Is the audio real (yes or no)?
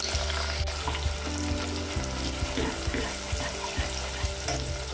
yes